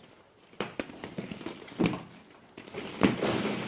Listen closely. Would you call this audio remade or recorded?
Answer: recorded